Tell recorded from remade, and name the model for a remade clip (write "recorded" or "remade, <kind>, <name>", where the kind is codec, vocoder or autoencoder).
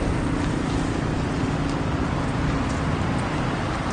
recorded